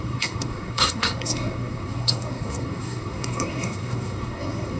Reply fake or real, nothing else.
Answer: fake